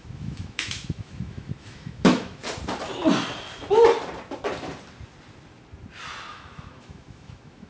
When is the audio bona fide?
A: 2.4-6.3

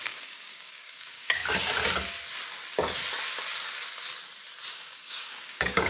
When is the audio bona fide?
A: 1.4-4.7